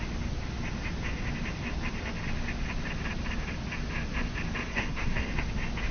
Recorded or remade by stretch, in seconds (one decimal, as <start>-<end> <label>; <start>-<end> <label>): 0.0-4.7 recorded; 4.7-5.3 remade; 5.3-5.9 recorded